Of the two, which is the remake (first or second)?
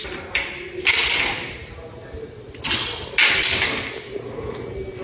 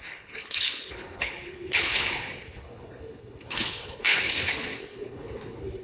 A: second